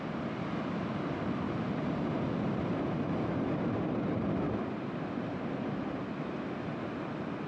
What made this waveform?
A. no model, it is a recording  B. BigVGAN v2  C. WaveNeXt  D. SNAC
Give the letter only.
A